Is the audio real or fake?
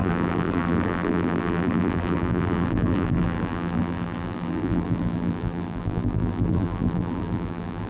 fake